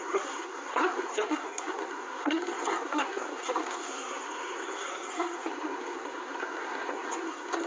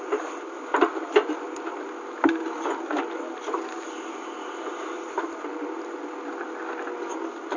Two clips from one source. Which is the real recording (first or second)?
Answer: second